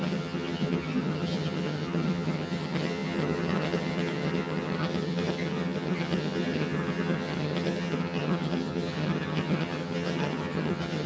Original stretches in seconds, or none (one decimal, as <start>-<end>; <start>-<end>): none